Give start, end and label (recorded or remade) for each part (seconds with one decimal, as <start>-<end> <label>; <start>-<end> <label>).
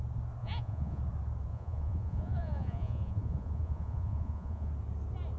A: 0.0-0.4 recorded; 0.4-1.0 remade; 1.0-1.5 recorded; 1.5-4.7 remade; 4.7-5.4 recorded